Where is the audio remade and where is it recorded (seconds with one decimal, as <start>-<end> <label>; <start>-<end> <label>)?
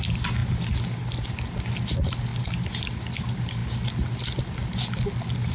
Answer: 0.0-5.5 recorded